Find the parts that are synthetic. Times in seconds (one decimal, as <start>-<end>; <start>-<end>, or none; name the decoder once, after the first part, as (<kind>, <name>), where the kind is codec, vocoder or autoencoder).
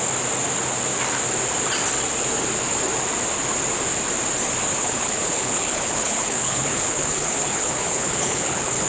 4.7-8.9 (codec, HILCodec)